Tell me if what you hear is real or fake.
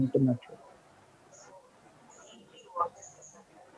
real